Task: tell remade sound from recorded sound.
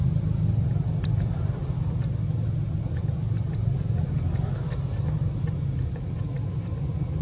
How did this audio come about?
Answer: recorded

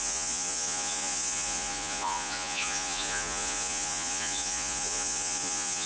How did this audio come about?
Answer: remade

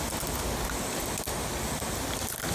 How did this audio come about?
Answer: recorded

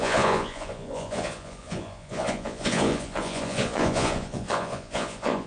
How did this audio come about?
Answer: remade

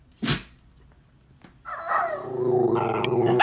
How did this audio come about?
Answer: recorded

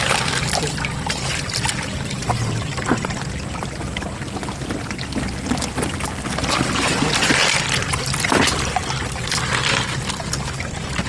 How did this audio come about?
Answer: recorded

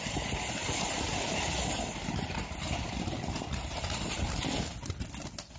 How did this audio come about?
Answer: recorded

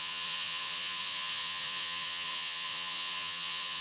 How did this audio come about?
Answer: remade